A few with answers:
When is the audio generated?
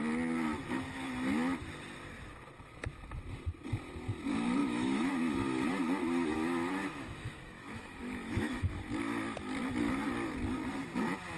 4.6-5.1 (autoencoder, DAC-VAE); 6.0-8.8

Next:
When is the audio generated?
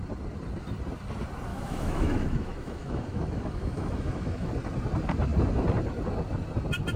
1.5-4.5 (autoencoder, DAC-VAE)